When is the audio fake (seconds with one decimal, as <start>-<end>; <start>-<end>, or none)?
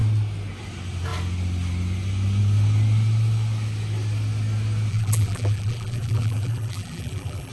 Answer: 4.9-7.5